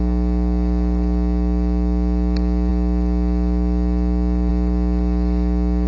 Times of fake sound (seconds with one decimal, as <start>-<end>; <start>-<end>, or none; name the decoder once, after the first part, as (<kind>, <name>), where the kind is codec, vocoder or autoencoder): none